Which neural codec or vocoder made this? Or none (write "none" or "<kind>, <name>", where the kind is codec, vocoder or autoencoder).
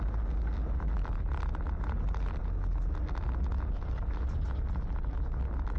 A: none